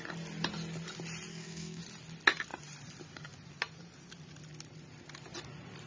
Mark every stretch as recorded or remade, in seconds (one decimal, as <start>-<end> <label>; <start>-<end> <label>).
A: 0.0-1.3 recorded; 1.3-1.8 remade; 1.8-5.9 recorded